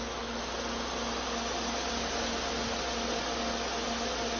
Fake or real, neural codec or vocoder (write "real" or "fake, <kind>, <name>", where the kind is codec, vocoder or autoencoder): real